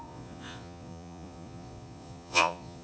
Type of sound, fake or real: fake